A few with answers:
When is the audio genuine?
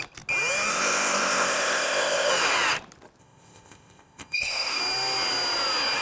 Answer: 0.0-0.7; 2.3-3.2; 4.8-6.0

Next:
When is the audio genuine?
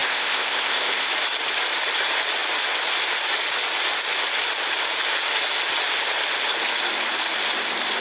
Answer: 1.1-8.0